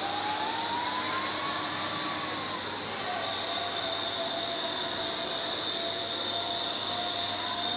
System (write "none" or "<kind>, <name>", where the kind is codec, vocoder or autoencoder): none